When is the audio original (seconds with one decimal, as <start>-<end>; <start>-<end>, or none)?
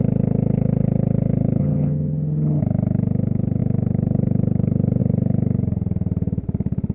0.0-1.6; 2.6-6.9